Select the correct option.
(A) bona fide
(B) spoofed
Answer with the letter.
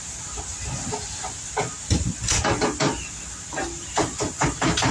A